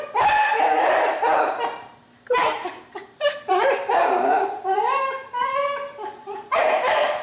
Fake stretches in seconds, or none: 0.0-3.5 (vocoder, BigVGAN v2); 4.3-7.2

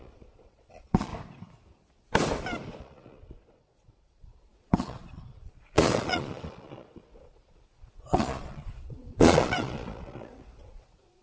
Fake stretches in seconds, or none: 0.0-1.1 (vocoder, Vocos); 2.8-11.2

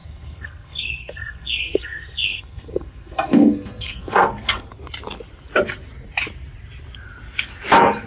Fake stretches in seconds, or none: 0.0-4.7 (codec, SNAC)

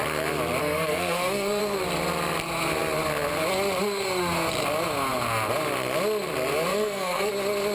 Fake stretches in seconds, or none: 0.6-1.6 (codec, SNAC); 6.7-7.3